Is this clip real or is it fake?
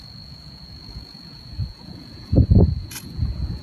fake